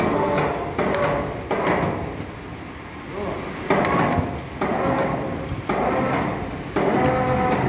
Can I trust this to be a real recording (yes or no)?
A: yes